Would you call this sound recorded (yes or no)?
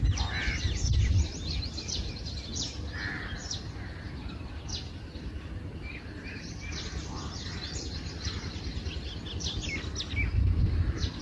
yes